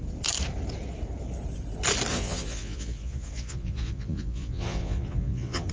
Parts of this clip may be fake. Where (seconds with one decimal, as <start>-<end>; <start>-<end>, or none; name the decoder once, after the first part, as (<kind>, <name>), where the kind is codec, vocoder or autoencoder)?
2.1-5.7 (vocoder, Vocos)

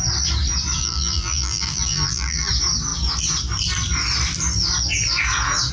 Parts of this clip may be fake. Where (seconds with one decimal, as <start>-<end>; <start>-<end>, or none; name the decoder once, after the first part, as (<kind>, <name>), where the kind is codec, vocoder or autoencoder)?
0.8-2.5 (vocoder, BigVGAN v2)

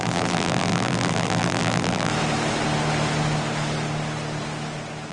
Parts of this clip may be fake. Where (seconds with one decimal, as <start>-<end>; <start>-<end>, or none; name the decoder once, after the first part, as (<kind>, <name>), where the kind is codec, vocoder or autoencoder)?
0.0-2.1 (vocoder, BigVGAN v2)

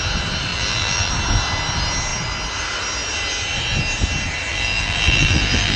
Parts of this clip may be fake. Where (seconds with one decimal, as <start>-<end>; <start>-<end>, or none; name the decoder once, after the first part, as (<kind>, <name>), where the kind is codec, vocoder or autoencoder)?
0.5-1.1 (vocoder, BigVGAN v2); 4.5-5.8